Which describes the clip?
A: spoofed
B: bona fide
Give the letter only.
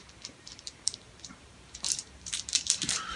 A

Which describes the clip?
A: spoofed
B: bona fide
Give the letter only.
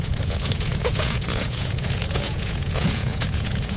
A